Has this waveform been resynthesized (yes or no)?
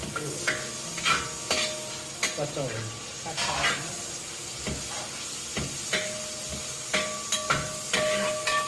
no